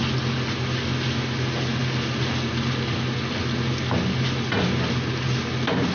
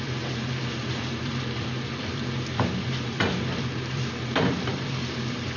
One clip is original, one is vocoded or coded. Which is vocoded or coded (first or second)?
second